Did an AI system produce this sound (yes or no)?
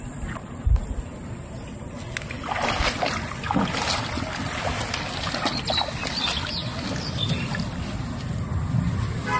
no